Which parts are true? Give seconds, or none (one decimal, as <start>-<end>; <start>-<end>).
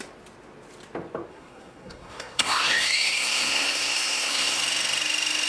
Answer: 0.0-1.3; 4.6-5.5